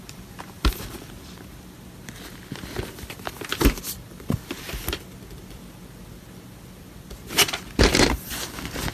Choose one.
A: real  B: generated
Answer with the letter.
A